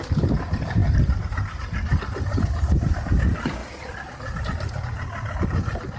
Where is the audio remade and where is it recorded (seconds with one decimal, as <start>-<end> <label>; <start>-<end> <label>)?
0.0-0.8 remade; 0.8-2.6 recorded; 2.6-3.6 remade; 3.6-4.4 recorded; 4.4-6.0 remade